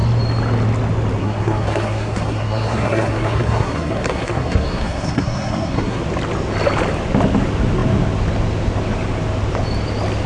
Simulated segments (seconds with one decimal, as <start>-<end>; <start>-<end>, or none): 1.2-6.0